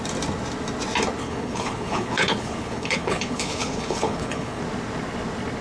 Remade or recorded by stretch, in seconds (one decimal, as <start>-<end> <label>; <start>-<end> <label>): 0.0-1.2 recorded; 1.2-4.6 remade; 4.6-5.6 recorded